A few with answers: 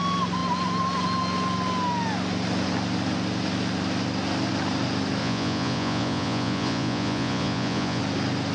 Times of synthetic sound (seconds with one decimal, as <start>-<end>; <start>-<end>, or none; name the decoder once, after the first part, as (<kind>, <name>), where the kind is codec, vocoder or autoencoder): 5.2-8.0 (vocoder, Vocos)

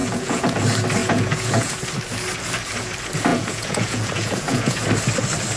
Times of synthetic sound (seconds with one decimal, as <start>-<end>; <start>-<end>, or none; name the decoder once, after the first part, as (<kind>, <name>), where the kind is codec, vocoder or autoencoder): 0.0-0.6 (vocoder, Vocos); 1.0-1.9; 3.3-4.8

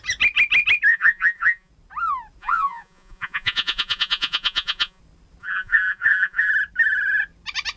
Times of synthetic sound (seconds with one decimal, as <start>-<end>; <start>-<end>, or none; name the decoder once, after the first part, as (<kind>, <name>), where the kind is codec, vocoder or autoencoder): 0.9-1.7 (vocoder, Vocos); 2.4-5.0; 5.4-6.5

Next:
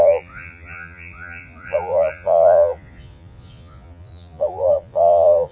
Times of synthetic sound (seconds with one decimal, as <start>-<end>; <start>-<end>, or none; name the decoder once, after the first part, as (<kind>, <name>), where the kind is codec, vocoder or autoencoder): 0.0-5.5 (vocoder, Vocos)